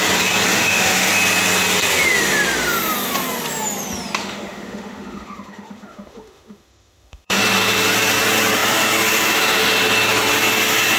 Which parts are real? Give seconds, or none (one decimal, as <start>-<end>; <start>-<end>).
0.0-0.5; 1.1-4.2; 7.4-11.0